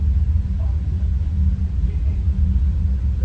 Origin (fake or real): real